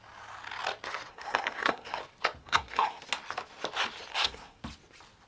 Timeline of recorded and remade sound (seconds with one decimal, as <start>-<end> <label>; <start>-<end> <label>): 0.0-1.1 recorded; 1.1-2.0 remade; 2.0-2.4 recorded; 2.4-3.0 remade; 3.0-4.1 recorded; 4.1-4.6 remade; 4.6-5.3 recorded